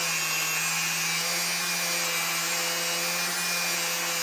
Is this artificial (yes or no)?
no